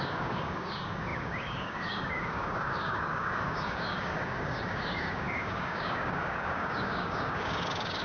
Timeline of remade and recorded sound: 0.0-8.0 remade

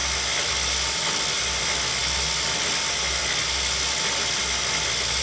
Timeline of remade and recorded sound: 0.0-5.2 recorded

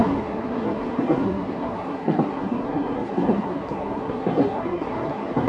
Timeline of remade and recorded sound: 0.0-5.5 remade

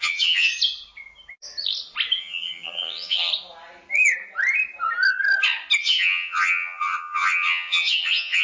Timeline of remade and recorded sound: 0.0-0.5 remade; 0.5-2.2 recorded; 2.2-3.3 remade; 3.3-5.8 recorded; 5.8-8.4 remade